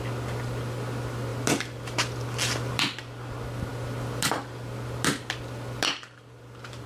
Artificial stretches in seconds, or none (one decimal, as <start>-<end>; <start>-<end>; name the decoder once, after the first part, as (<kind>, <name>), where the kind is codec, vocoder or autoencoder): none